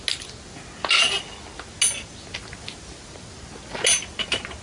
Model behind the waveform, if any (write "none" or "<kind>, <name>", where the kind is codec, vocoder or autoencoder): none